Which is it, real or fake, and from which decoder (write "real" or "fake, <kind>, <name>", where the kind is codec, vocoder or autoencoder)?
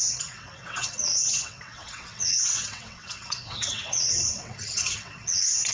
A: fake, vocoder, WaveNeXt